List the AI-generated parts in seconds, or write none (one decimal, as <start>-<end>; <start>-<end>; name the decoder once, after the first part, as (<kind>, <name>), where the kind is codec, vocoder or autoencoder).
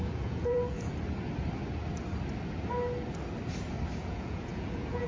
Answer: 0.0-0.9 (vocoder, Vocos); 4.0-5.1